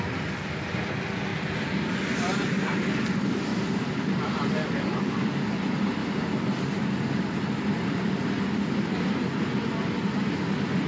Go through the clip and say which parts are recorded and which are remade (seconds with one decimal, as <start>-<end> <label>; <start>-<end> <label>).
0.0-1.3 recorded; 1.3-1.9 remade; 1.9-3.5 recorded; 3.5-5.4 remade; 5.4-6.0 recorded; 6.0-8.4 remade; 8.4-10.9 recorded